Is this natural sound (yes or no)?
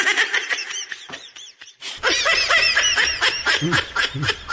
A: no